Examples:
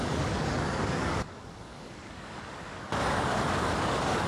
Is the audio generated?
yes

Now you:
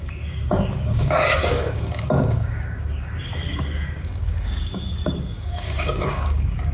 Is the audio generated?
yes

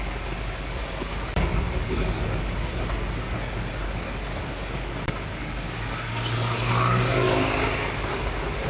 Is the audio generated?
yes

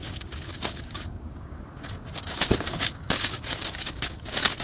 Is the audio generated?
yes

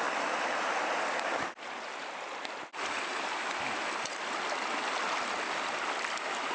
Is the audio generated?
no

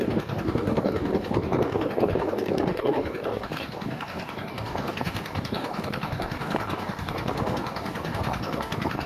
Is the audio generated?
yes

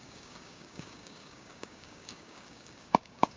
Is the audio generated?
yes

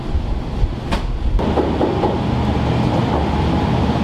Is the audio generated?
no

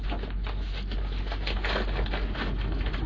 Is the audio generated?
no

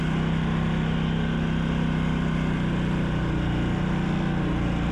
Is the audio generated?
no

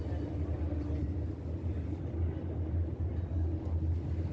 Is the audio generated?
no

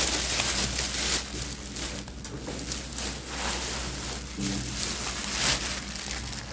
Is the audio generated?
no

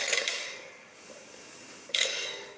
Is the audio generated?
yes